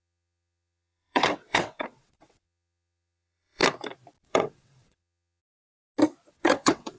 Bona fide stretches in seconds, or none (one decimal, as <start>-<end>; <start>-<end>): 3.6-4.2; 5.4-6.3

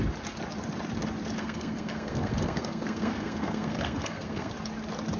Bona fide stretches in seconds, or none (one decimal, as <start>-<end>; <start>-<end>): 0.0-1.4; 4.5-5.2

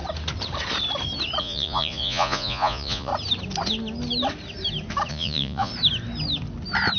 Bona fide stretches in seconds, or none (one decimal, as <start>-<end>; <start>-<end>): 0.0-1.4; 3.1-5.1; 5.7-7.0

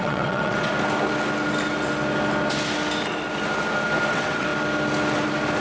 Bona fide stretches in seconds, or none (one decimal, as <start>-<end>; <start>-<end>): 0.7-4.1; 4.5-5.6

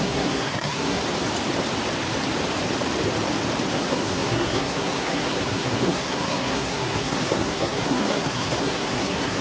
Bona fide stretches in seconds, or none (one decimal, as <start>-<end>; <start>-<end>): 1.0-3.7

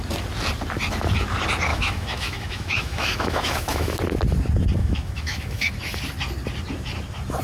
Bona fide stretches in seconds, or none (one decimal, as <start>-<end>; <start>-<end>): 0.0-1.7; 4.0-4.8; 5.7-7.4

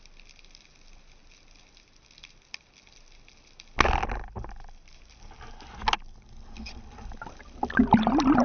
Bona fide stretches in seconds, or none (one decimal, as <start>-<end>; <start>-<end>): 0.0-8.4

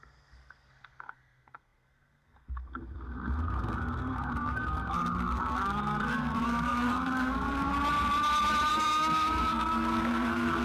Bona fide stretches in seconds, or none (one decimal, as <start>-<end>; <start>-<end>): 7.7-8.7